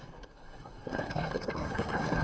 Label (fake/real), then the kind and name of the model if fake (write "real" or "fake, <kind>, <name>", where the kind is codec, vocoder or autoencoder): fake, codec, SNAC